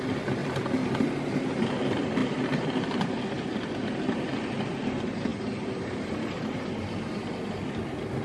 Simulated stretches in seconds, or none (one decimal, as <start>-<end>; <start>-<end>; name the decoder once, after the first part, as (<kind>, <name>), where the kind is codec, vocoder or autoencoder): 0.4-1.8 (vocoder, BigVGAN v2); 2.2-3.3